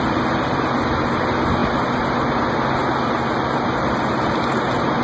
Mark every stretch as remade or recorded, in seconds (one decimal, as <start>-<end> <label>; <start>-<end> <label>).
0.0-5.0 recorded